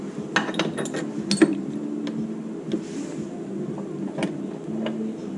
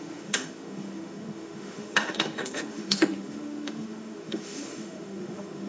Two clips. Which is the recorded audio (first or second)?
first